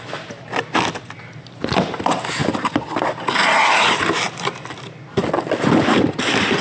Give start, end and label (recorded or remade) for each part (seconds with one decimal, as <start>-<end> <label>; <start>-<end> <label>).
0.0-6.6 recorded